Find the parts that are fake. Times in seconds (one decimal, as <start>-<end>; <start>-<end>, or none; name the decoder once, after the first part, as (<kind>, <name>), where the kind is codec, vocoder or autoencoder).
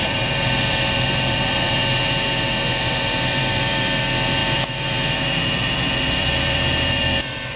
0.0-1.8 (vocoder, BigVGAN v2); 3.3-7.6